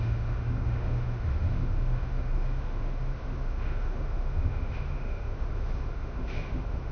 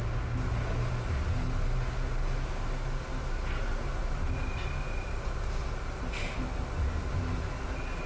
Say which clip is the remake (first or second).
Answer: first